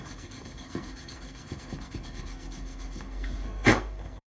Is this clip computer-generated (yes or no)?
yes